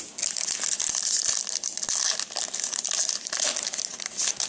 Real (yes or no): yes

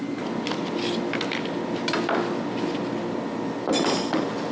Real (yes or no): yes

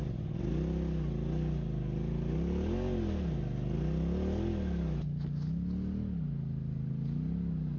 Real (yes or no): yes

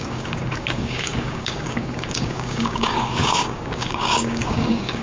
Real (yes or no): no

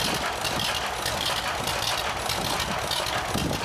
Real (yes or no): yes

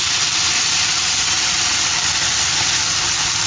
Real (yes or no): yes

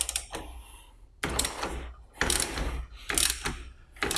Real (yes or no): yes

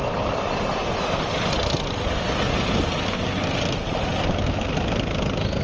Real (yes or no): yes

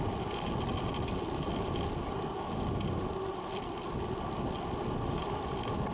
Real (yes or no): yes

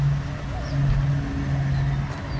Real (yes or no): yes